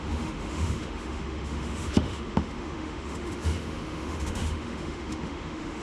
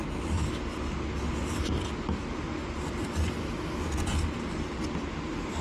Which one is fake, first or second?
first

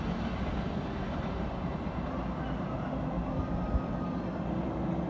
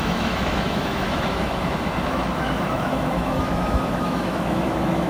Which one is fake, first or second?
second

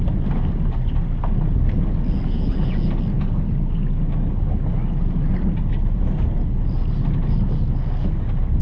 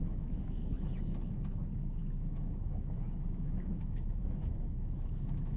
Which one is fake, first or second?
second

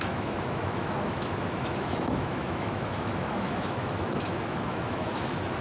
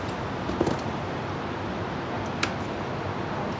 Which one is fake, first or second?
first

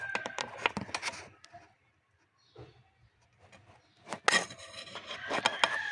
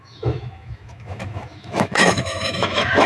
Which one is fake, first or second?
second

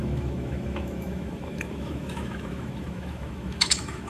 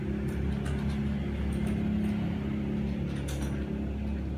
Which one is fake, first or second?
first